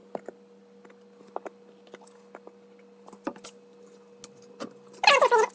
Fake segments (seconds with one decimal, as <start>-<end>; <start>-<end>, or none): none